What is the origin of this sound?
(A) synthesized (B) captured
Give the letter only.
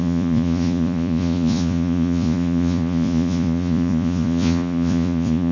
A